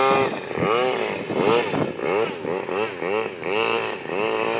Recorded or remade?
recorded